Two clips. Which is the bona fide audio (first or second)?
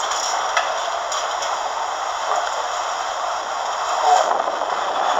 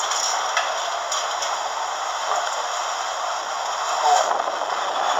second